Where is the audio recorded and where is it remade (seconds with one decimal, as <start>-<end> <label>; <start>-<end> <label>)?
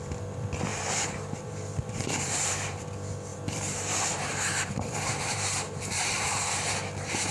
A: 0.0-0.7 recorded; 0.7-2.8 remade; 2.8-3.3 recorded; 3.3-6.5 remade; 6.5-7.3 recorded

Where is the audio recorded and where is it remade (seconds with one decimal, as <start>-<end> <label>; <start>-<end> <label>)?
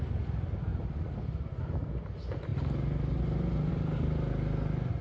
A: 0.0-0.7 recorded; 0.7-1.6 remade; 1.6-5.0 recorded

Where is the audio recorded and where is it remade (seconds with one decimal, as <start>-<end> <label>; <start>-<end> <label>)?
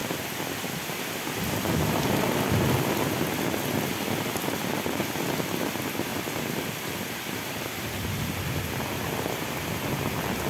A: 0.0-1.0 remade; 1.0-6.1 recorded; 6.1-7.5 remade; 7.5-10.5 recorded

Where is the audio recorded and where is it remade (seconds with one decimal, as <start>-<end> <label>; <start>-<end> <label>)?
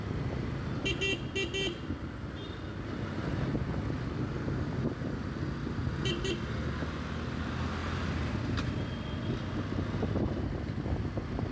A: 0.0-11.5 recorded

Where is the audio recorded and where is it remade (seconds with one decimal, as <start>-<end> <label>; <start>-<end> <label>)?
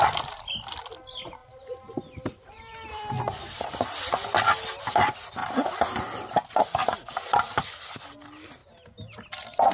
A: 0.0-1.4 recorded; 1.4-4.1 remade; 4.1-9.7 recorded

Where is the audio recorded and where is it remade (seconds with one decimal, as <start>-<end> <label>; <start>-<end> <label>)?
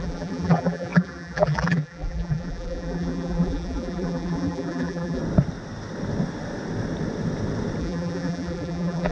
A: 0.0-5.2 remade; 5.2-7.8 recorded; 7.8-9.1 remade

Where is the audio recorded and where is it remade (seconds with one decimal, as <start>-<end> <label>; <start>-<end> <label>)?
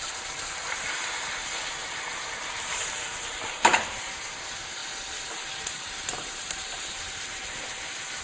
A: 0.0-4.8 remade; 4.8-5.6 recorded; 5.6-8.2 remade